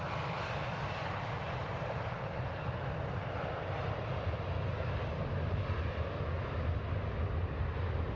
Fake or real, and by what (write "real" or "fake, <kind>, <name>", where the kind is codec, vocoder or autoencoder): real